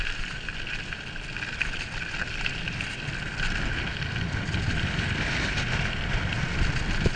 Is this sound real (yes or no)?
yes